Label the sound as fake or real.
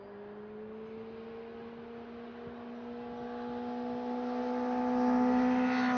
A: real